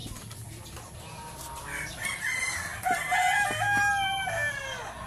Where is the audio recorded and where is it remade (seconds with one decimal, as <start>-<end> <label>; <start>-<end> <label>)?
0.0-5.1 recorded